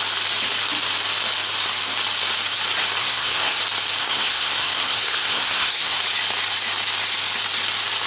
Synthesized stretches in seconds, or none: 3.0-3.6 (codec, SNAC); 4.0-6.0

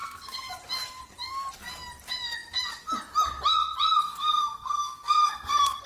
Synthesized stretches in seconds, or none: 0.0-0.5 (codec, SNAC); 4.0-5.9

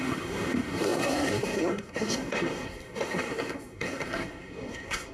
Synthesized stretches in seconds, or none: 0.0-5.1 (codec, SNAC)

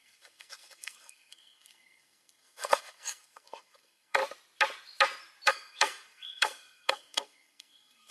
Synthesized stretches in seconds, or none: 0.0-4.2 (codec, SNAC); 5.5-8.1